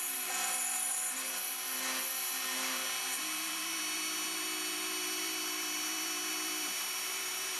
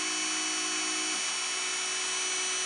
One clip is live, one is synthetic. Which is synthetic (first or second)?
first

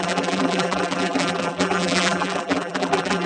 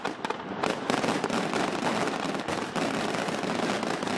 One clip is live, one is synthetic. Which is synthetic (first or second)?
first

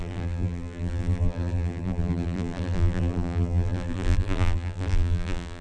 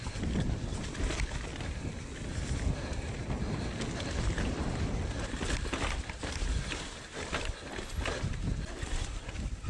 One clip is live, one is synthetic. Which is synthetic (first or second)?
first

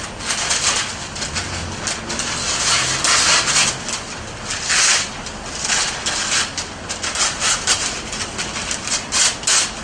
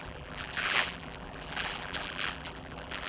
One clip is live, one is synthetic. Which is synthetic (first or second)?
second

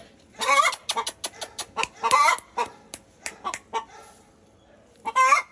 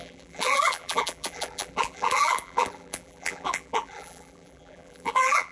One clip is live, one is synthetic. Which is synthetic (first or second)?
second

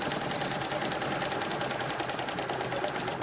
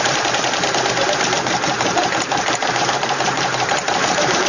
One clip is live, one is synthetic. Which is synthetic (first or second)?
second